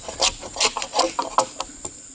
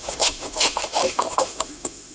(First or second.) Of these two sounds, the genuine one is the first